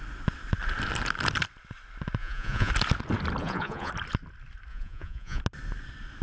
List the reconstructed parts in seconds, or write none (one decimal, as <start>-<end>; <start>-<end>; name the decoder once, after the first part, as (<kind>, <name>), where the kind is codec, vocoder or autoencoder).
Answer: 2.2-2.7 (vocoder, Vocos); 3.4-3.9; 4.7-5.4